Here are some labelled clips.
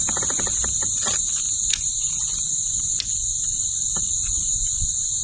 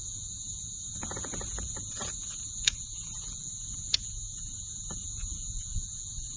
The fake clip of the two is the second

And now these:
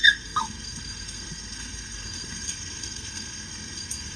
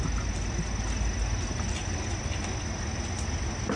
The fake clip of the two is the first